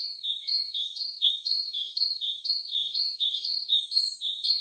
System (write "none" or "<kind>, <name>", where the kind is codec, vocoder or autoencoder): codec, DAC